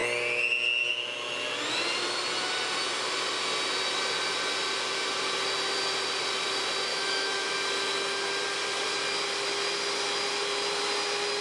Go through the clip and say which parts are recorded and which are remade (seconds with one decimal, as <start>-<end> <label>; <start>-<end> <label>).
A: 0.0-6.9 recorded; 6.9-7.5 remade; 7.5-11.4 recorded